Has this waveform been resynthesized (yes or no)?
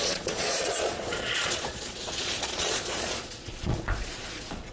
yes